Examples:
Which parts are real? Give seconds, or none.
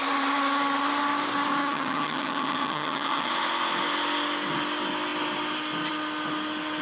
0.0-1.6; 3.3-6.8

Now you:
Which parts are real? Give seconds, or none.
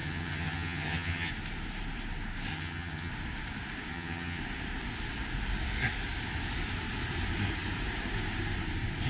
1.3-2.5; 3.1-3.9; 4.4-9.1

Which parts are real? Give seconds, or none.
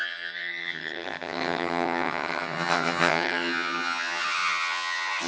none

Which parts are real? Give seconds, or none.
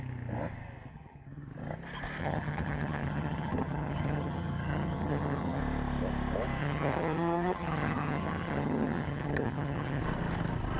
0.0-0.9; 1.5-2.2; 5.6-6.6; 10.0-10.8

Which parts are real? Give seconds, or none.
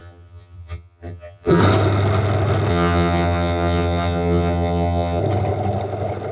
1.6-2.7; 5.2-6.3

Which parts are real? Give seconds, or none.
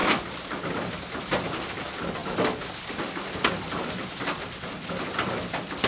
0.0-5.9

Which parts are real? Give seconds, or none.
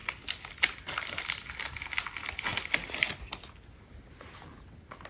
0.0-5.1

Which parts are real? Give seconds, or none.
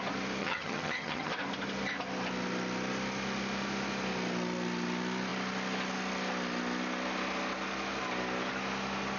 0.0-0.4; 1.3-9.2